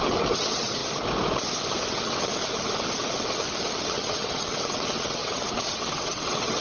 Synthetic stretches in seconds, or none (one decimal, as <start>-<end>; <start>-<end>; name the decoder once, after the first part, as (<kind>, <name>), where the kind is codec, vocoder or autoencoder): 0.0-0.8 (vocoder, WaveNeXt); 1.8-2.3; 3.8-6.6